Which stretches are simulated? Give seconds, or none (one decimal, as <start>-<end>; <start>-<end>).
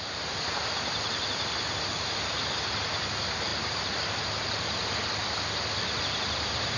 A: none